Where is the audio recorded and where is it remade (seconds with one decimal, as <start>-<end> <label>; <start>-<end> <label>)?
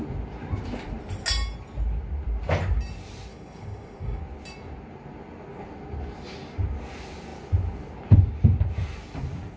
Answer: 0.0-3.3 recorded; 3.3-4.2 remade; 4.2-9.6 recorded